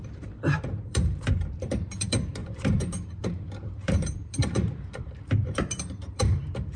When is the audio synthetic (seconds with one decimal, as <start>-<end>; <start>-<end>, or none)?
0.0-6.8